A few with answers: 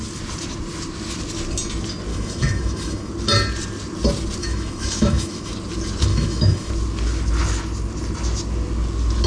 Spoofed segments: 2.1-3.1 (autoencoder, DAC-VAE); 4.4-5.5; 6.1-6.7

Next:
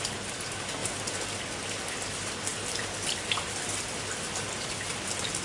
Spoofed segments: none

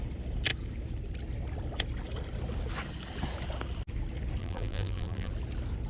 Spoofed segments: 4.4-5.3 (vocoder, BigVGAN v2)

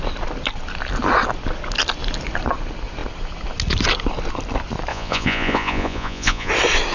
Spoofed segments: 4.9-6.5 (vocoder, Vocos)